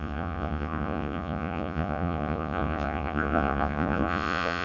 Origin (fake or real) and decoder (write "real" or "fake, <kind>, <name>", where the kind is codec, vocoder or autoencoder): fake, vocoder, Vocos